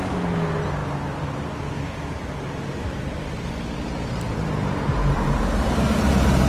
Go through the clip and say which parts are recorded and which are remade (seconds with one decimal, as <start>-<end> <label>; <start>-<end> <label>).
0.0-5.0 recorded; 5.0-6.5 remade